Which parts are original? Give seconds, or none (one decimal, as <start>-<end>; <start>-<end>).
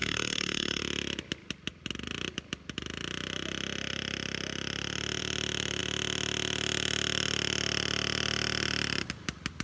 0.8-9.6